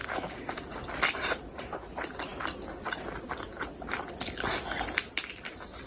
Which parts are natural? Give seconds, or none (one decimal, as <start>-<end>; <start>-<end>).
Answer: 0.6-5.9

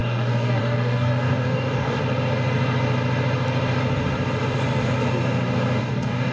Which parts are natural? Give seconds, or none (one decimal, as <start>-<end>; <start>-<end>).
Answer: 2.0-5.8